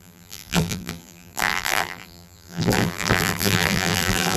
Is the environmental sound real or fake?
fake